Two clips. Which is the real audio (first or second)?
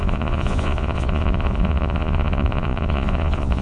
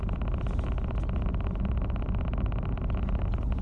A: second